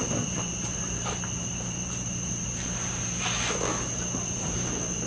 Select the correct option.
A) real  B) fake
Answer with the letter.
B